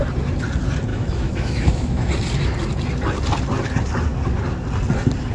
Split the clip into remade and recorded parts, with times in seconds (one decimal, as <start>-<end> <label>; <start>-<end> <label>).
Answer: 0.0-0.9 recorded; 0.9-2.1 remade; 2.1-5.3 recorded